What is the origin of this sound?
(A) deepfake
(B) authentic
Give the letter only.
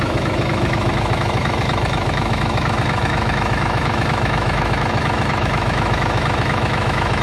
A